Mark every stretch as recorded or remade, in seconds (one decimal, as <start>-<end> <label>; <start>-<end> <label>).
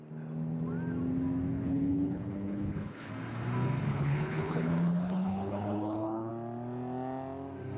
0.0-1.5 recorded; 1.5-3.1 remade; 3.1-3.9 recorded; 3.9-6.3 remade; 6.3-7.8 recorded